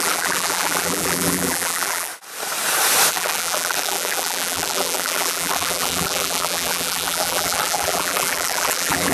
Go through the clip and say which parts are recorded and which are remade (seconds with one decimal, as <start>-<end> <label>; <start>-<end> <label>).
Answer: 0.0-2.1 remade; 2.1-3.1 recorded; 3.1-9.1 remade